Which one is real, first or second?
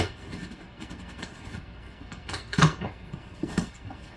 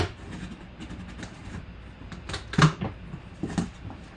second